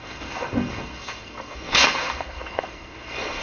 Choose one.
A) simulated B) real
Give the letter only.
A